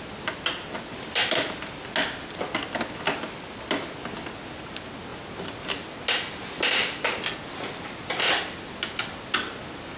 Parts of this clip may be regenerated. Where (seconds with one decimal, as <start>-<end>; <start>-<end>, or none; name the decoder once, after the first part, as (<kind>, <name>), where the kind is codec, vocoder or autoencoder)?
none